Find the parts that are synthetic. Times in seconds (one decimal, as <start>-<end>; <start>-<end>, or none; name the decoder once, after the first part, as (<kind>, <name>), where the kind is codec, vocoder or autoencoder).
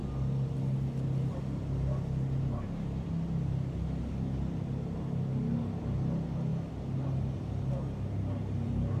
none